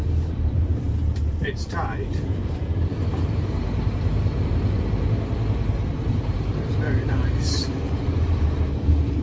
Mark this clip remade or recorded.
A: remade